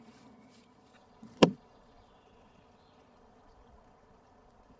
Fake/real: fake